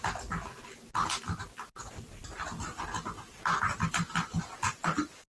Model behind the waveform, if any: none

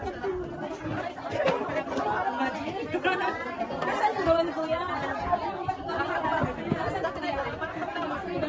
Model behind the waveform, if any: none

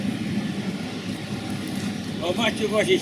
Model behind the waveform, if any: none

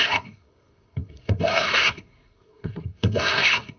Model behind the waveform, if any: codec, SNAC